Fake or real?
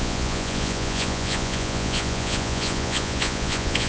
fake